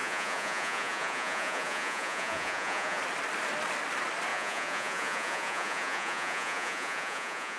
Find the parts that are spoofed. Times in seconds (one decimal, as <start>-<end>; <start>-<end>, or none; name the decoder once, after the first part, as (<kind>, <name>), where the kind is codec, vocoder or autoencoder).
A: 0.0-3.0 (vocoder, Vocos); 4.3-7.6